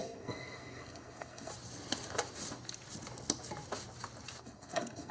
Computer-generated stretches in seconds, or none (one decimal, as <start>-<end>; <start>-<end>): 0.0-1.5; 4.4-5.1